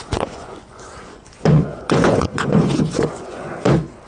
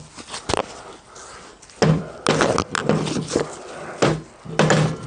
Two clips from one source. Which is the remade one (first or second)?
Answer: first